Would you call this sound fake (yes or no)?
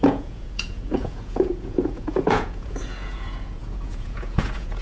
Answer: yes